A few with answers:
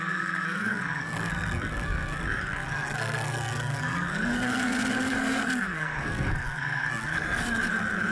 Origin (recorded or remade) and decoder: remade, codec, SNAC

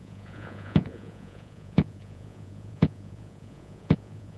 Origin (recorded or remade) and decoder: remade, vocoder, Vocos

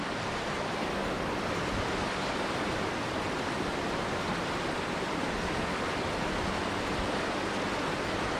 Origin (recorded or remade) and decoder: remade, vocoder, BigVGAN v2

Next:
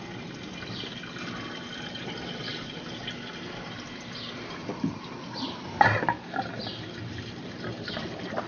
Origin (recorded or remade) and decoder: recorded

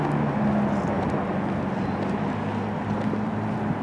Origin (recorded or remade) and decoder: recorded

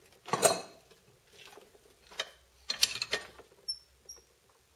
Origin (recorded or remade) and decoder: recorded